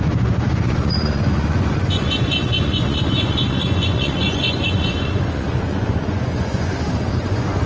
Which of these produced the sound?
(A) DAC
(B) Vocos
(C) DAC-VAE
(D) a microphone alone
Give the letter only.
B